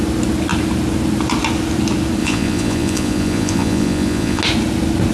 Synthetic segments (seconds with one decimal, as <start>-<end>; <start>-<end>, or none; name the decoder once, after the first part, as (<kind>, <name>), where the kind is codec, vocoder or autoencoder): 2.2-4.4 (vocoder, Vocos)